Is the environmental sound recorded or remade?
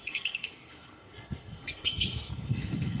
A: remade